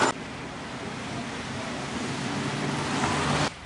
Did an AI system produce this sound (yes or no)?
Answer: no